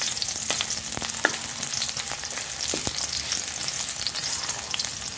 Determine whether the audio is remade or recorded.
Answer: recorded